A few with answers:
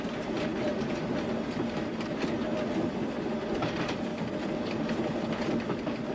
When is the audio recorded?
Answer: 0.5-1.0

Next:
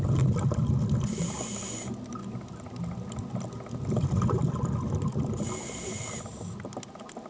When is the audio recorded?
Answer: 0.0-7.3